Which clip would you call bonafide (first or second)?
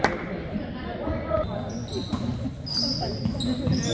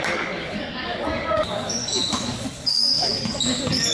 first